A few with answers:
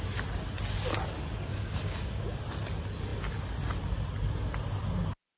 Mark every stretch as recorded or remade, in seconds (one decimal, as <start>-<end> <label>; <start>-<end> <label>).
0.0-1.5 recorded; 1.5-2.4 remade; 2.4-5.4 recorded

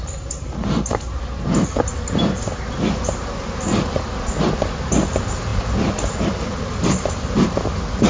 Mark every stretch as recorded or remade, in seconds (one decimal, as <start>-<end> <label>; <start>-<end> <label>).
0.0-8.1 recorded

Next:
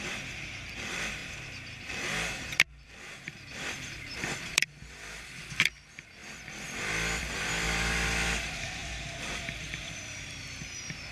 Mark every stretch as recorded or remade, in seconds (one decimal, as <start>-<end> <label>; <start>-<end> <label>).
0.0-6.2 remade; 6.2-6.8 recorded; 6.8-11.1 remade

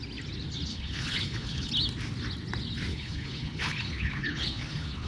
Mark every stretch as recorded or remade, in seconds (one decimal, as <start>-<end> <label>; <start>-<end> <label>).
0.0-0.7 recorded; 0.7-1.7 remade; 1.7-2.9 recorded; 2.9-5.1 remade

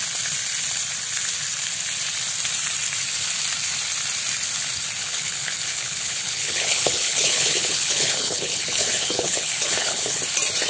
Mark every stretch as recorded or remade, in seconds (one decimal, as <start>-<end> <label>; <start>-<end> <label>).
0.0-5.0 recorded; 5.0-10.2 remade; 10.2-10.7 recorded